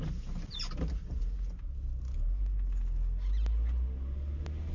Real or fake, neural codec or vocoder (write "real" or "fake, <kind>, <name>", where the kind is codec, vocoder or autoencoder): real